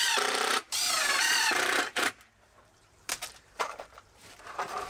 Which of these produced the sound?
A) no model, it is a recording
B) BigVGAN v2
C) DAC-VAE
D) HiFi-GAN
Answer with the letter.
B